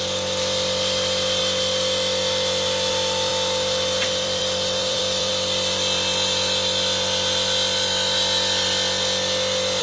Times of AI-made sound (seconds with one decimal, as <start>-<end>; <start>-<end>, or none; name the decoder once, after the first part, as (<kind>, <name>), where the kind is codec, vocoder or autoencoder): 0.0-1.4 (vocoder, BigVGAN v2); 2.9-5.3